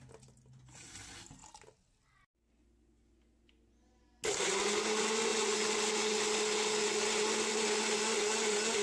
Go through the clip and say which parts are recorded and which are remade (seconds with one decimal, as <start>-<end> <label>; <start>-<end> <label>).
0.0-8.8 recorded